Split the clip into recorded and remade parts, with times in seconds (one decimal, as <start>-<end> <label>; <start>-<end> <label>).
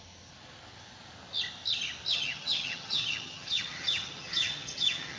0.0-2.1 recorded; 2.1-5.2 remade